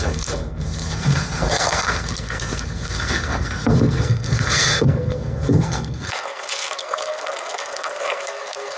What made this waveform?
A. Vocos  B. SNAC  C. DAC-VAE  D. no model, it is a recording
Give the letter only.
B